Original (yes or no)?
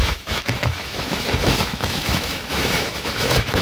no